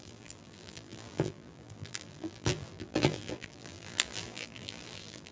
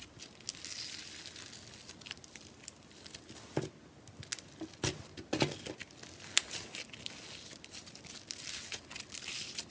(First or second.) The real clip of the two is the second